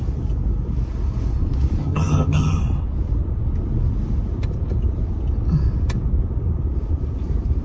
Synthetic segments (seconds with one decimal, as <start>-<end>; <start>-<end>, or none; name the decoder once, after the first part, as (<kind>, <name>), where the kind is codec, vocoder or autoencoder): 1.8-2.6 (vocoder, HiFi-GAN)